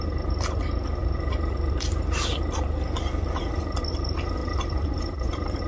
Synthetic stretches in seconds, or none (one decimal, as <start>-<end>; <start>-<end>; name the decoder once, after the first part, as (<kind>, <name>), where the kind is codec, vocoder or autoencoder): 4.4-5.7 (vocoder, BigVGAN v2)